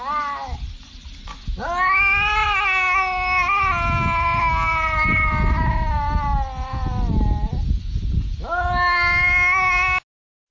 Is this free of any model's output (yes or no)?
yes